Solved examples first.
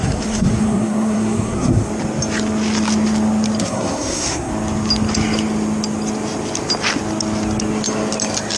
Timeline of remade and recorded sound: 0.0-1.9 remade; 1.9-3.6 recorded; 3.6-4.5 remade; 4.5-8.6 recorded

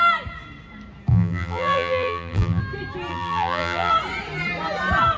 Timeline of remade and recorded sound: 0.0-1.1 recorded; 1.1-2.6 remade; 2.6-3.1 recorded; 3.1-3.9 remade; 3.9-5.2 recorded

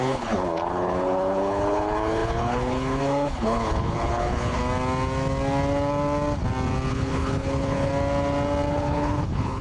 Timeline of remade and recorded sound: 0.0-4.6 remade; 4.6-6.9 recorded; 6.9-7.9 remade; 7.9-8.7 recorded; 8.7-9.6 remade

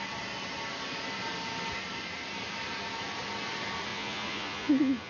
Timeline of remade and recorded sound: 0.0-3.9 recorded; 3.9-5.1 remade

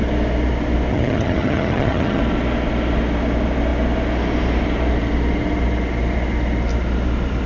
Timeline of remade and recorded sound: 0.0-0.9 recorded; 0.9-2.2 remade; 2.2-7.5 recorded